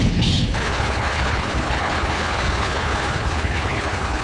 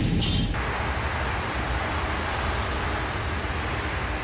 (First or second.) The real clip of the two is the second